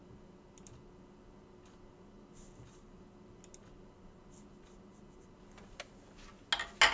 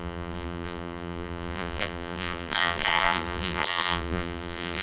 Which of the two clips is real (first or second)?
first